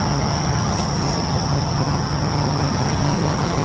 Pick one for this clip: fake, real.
fake